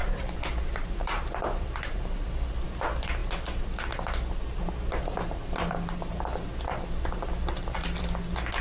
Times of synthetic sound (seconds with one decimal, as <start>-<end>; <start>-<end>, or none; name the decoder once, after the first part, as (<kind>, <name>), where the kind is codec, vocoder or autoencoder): 0.0-2.0 (vocoder, BigVGAN v2)